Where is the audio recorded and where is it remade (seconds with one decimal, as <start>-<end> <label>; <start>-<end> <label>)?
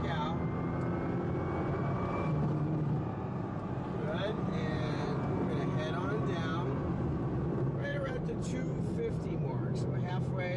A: 0.0-1.8 recorded; 1.8-5.5 remade; 5.5-7.9 recorded; 7.9-8.8 remade; 8.8-9.5 recorded; 9.5-10.1 remade; 10.1-10.6 recorded